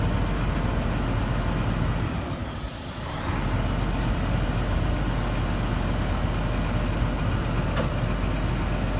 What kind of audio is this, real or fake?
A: real